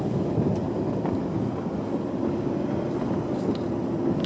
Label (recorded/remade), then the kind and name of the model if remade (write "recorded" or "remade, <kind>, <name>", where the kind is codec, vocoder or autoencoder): recorded